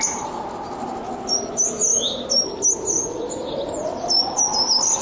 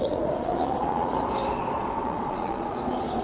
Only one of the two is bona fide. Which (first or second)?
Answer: first